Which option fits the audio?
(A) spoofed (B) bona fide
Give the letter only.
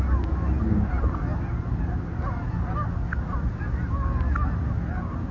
B